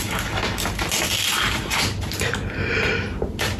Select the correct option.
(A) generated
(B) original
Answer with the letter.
B